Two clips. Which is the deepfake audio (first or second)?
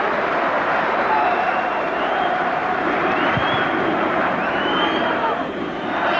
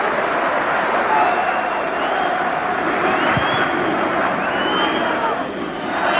first